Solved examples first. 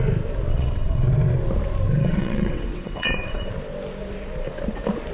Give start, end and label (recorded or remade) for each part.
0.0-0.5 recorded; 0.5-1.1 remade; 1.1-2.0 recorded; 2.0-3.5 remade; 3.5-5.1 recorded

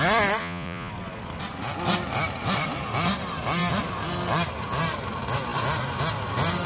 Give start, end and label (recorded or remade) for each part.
0.0-0.4 recorded; 0.4-0.9 remade; 0.9-6.7 recorded

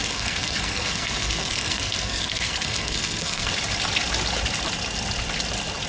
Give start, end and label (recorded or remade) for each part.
0.0-3.5 remade; 3.5-5.9 recorded

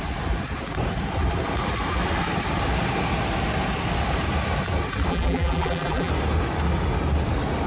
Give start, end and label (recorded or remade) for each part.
0.0-5.1 recorded; 5.1-6.1 remade; 6.1-7.7 recorded

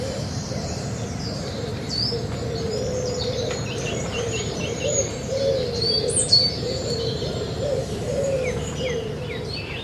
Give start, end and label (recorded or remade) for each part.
0.0-1.7 remade; 1.7-4.1 recorded; 4.1-9.8 remade

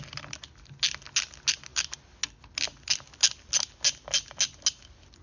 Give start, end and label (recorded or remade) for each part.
0.0-5.2 recorded